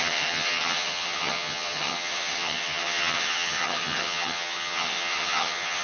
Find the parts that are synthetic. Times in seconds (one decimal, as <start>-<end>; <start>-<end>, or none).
0.0-5.8